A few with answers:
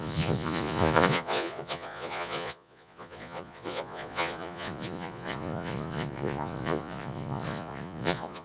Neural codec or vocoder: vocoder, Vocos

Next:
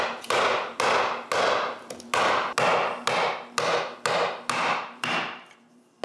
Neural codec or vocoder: none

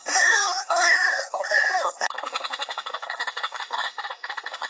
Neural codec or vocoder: codec, SNAC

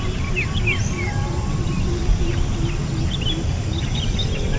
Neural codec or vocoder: none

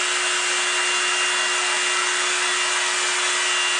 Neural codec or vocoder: none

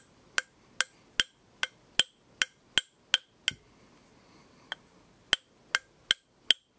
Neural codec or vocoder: none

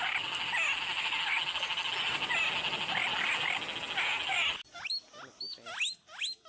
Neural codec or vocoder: none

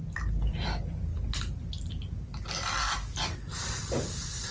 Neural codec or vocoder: none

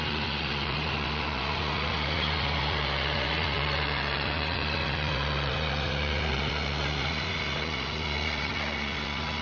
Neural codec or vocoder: vocoder, Vocos